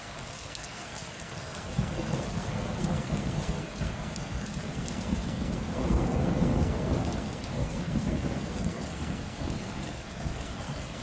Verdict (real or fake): fake